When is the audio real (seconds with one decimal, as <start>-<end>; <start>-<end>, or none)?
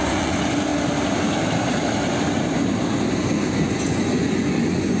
0.7-3.7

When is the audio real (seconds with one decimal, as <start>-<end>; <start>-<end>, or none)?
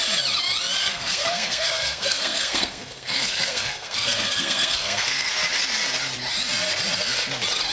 0.0-0.8; 5.3-7.7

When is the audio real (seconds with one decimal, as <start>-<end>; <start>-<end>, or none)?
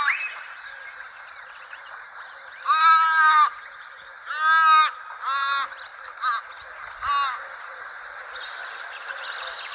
0.0-9.7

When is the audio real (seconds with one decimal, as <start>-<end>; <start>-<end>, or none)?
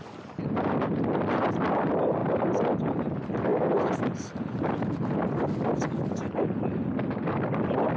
0.0-8.0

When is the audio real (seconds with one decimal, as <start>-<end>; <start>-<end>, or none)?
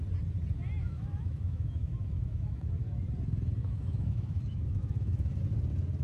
0.0-0.8; 3.0-3.6; 5.4-6.0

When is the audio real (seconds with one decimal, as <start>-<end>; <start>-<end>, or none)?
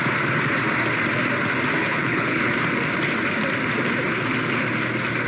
0.0-1.8; 2.5-5.3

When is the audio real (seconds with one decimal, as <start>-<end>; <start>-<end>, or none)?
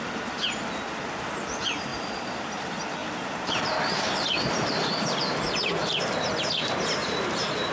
0.0-1.9; 2.5-3.0; 6.0-7.0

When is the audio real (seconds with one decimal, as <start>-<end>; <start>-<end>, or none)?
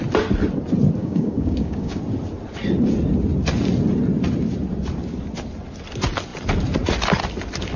0.0-1.0; 2.0-7.8